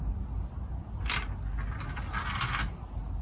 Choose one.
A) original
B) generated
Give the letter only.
A